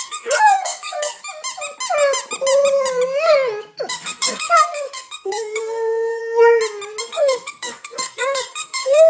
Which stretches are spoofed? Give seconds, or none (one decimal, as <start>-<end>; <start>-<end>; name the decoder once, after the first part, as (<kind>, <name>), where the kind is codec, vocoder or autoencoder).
0.0-1.2 (codec, SNAC); 3.9-6.2; 7.0-9.1